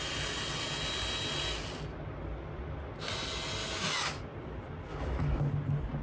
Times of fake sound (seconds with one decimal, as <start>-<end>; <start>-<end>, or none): 3.6-4.2; 4.9-5.4